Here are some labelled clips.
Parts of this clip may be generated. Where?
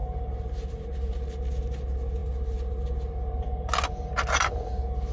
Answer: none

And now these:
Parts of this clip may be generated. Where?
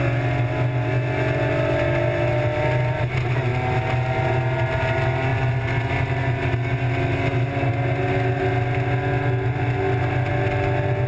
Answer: none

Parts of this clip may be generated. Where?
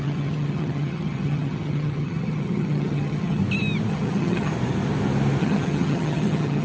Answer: 0.0-3.4 (vocoder, HiFi-GAN); 3.9-4.5; 5.4-6.6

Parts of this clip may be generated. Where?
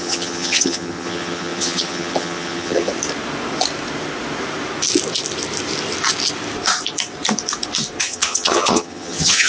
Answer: 0.0-2.9 (vocoder, HiFi-GAN); 8.0-9.5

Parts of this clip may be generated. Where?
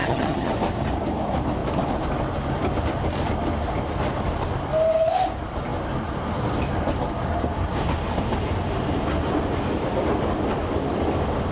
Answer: 0.0-0.5 (vocoder, HiFi-GAN)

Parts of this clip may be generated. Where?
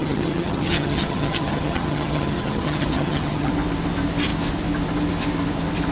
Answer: 0.0-3.5 (vocoder, HiFi-GAN)